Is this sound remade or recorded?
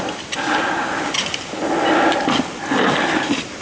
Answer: recorded